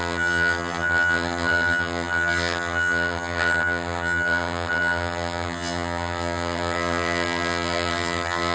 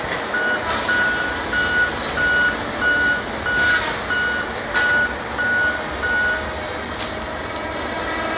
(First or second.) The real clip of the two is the second